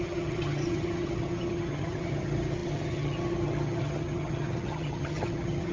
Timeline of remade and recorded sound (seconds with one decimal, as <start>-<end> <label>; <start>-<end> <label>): 0.0-5.7 remade